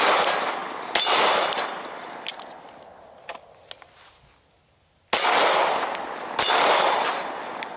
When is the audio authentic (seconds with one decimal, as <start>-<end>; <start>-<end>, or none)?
0.0-7.8